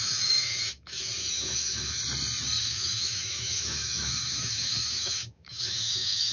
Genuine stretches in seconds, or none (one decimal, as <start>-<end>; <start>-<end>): 2.0-2.6